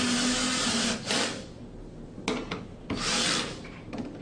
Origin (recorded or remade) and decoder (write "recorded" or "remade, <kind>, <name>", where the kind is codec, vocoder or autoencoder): recorded